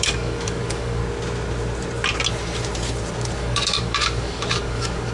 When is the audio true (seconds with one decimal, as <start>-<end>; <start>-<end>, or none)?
1.0-3.4